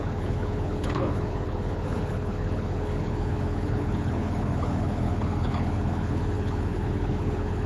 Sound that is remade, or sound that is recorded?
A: remade